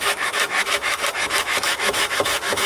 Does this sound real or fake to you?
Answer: fake